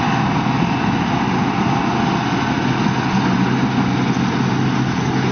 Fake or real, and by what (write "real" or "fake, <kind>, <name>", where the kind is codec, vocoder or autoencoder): real